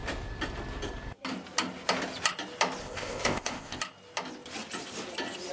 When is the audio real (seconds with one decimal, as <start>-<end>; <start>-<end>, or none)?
0.0-2.8; 3.8-5.5